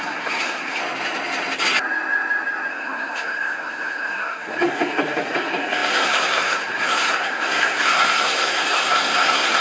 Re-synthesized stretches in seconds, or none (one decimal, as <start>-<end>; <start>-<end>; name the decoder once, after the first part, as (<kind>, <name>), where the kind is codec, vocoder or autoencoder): 0.0-0.8 (codec, SNAC); 2.7-9.6